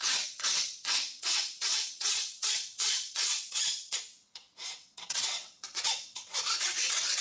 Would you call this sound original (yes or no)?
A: no